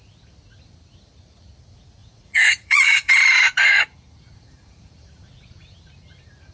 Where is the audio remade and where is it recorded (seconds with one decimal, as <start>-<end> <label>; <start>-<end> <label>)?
0.0-2.0 recorded; 2.0-5.9 remade; 5.9-6.5 recorded